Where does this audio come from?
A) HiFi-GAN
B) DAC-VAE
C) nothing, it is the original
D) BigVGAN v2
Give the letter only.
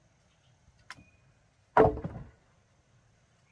C